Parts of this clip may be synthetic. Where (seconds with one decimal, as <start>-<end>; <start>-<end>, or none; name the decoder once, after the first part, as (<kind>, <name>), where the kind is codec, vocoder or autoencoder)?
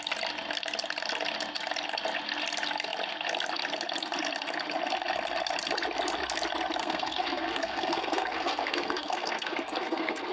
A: 6.8-10.3 (codec, SNAC)